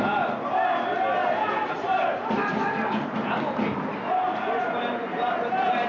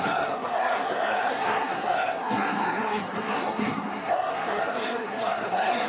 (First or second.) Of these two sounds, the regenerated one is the second